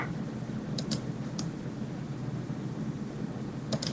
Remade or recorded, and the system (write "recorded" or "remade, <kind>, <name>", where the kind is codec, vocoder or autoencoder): recorded